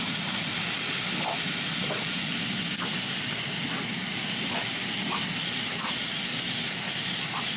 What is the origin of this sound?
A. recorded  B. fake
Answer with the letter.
A